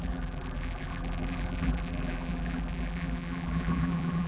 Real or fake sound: fake